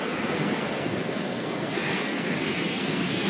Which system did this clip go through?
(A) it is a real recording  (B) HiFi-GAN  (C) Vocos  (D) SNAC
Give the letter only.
D